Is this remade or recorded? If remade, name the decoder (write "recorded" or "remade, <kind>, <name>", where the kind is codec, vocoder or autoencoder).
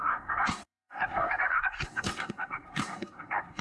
remade, codec, SNAC